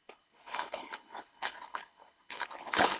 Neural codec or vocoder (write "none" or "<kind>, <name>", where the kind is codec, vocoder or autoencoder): codec, HILCodec